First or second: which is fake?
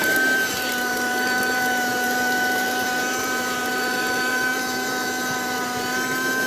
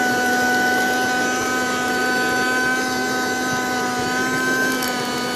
first